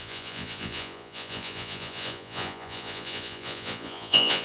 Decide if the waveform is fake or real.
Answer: fake